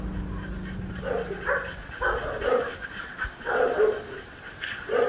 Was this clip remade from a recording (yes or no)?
no